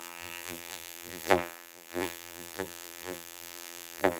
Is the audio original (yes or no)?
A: no